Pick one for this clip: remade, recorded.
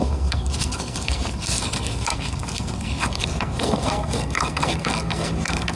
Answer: remade